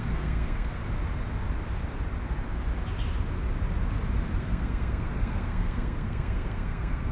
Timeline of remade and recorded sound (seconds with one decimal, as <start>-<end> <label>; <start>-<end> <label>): 0.0-0.8 remade; 0.8-4.4 recorded; 4.4-7.1 remade